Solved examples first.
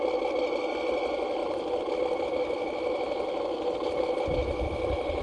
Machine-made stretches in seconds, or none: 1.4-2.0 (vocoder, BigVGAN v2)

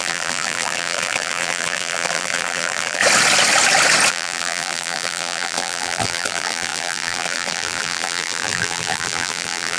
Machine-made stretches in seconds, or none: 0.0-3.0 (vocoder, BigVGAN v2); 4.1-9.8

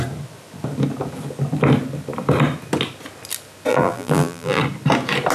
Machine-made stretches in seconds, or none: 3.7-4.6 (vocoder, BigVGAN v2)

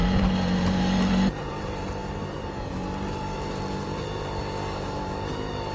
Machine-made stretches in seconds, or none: 0.0-5.7 (vocoder, BigVGAN v2)

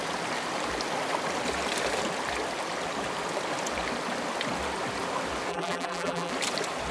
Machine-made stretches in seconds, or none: 5.5-6.3 (vocoder, BigVGAN v2)

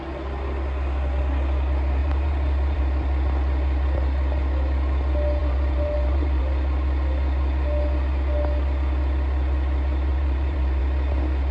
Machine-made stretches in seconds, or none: 2.0-2.8 (vocoder, BigVGAN v2); 5.4-6.4; 10.1-10.8

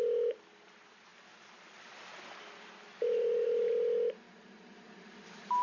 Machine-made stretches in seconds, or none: 1.1-3.7 (vocoder, BigVGAN v2)

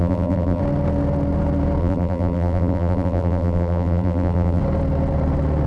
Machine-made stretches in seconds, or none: 0.0-0.6 (vocoder, BigVGAN v2); 1.8-4.6